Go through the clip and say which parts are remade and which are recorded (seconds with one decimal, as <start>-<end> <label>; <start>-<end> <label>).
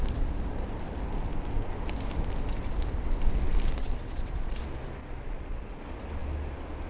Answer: 0.0-3.8 recorded; 3.8-4.6 remade; 4.6-5.0 recorded; 5.0-5.8 remade; 5.8-6.9 recorded